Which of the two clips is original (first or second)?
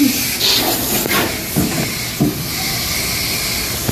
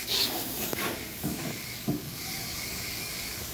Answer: first